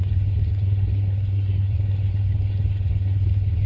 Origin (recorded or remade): remade